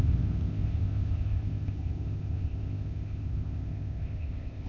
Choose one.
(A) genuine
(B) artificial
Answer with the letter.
B